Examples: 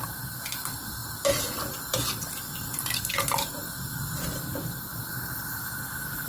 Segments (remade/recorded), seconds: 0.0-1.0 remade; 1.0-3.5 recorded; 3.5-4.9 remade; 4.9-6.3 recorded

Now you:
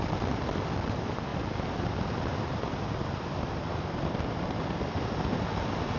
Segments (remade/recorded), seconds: 0.0-6.0 recorded

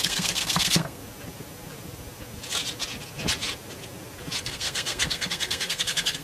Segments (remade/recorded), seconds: 0.0-1.0 remade; 1.0-4.4 recorded; 4.4-6.2 remade

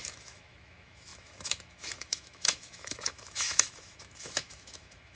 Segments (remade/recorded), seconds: 0.0-5.2 remade

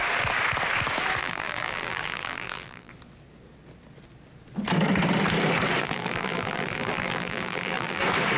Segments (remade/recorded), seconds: 0.0-1.2 recorded; 1.2-2.9 remade; 2.9-5.8 recorded; 5.8-8.0 remade; 8.0-8.4 recorded

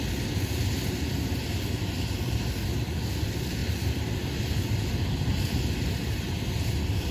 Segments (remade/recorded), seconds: 0.0-3.6 recorded; 3.6-4.6 remade; 4.6-7.1 recorded

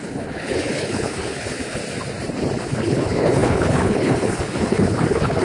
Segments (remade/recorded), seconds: 0.0-1.8 remade; 1.8-2.6 recorded; 2.6-5.4 remade